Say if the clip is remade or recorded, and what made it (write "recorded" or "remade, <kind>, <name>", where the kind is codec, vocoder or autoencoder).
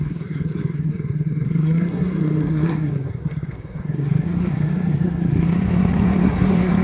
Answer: remade, codec, SNAC